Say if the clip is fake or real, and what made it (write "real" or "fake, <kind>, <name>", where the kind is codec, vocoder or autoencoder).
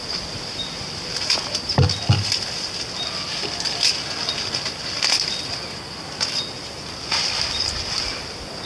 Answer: real